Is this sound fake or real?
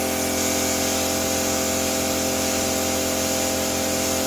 real